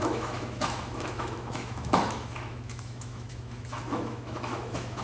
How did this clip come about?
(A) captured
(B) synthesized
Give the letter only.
B